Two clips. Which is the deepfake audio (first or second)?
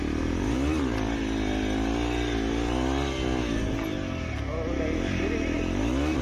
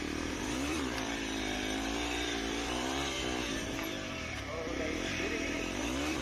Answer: second